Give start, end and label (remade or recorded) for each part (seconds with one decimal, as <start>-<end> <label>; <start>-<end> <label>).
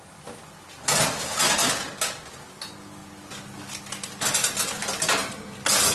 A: 0.0-5.9 recorded